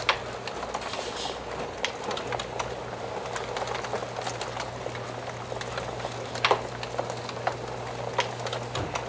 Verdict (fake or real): real